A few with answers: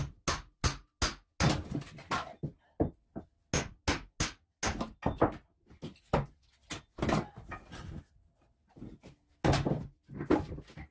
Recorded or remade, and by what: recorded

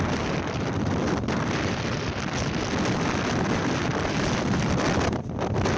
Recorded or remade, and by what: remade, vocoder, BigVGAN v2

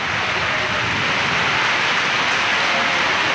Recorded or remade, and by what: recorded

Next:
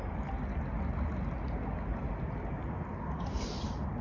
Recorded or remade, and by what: recorded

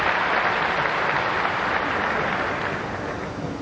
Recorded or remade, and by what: recorded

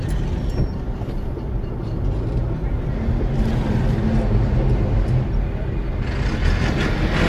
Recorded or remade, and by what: recorded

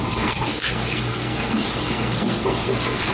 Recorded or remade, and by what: remade, codec, SNAC